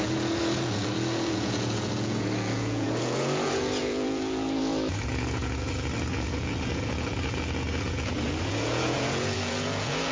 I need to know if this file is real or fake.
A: fake